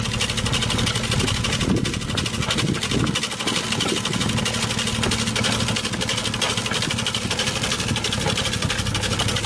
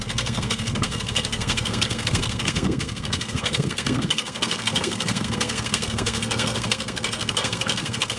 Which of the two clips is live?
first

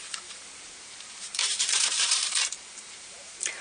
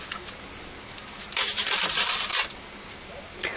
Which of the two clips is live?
second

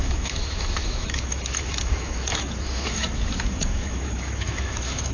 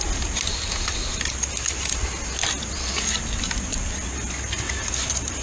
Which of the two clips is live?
second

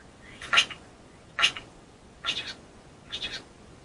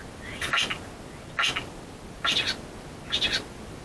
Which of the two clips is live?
second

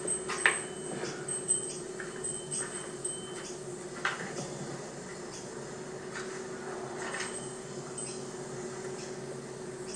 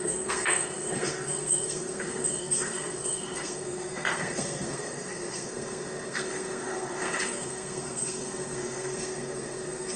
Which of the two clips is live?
first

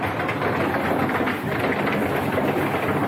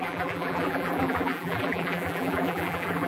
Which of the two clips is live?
first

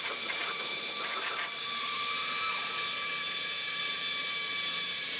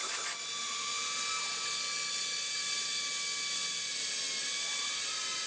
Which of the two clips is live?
second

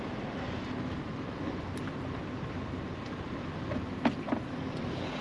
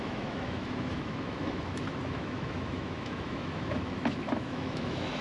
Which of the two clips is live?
first